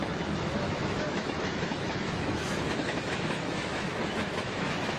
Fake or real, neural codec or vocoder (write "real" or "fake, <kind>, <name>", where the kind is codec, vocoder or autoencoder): fake, autoencoder, DAC-VAE